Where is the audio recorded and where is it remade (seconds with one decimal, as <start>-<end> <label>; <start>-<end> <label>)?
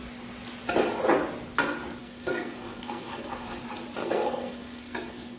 0.0-2.0 recorded; 2.0-3.6 remade; 3.6-4.0 recorded; 4.0-5.4 remade